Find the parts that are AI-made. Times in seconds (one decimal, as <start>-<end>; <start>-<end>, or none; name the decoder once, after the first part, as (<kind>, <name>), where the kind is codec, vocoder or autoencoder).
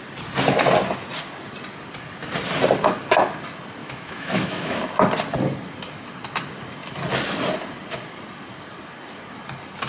3.8-4.8 (autoencoder, DAC-VAE)